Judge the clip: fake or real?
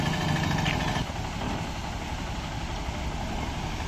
real